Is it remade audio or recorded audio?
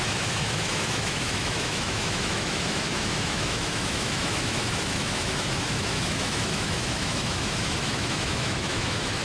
remade